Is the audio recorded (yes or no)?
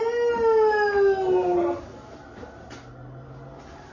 yes